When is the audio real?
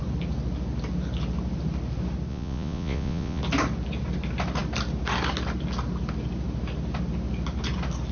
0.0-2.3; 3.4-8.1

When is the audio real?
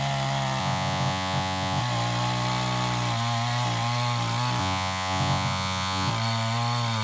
0.0-0.6; 1.8-4.6; 6.1-7.0